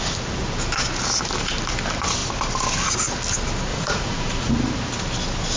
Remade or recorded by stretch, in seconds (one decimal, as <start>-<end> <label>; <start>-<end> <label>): 0.0-3.7 recorded; 3.7-4.5 remade; 4.5-5.6 recorded